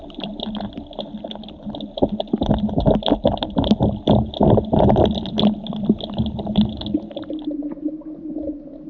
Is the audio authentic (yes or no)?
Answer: yes